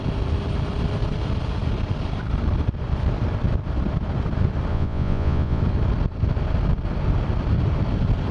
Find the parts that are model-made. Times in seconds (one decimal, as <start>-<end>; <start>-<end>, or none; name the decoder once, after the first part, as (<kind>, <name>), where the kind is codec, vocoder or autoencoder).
4.7-5.6 (vocoder, Vocos)